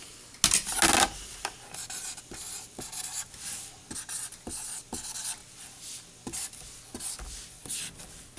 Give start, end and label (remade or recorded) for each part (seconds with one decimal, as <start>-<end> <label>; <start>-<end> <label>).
0.0-8.4 recorded